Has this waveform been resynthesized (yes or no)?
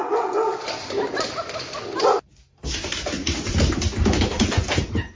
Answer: no